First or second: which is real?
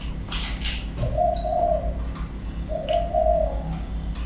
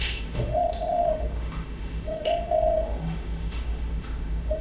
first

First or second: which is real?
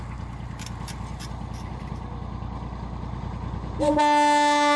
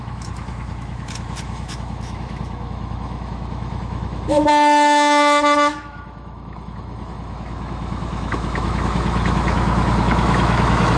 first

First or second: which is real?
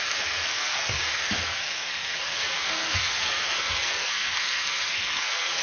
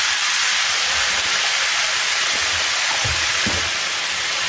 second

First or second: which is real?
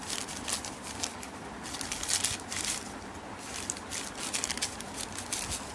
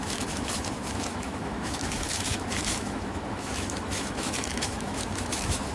first